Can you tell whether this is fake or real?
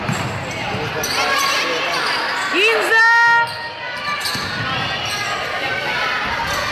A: real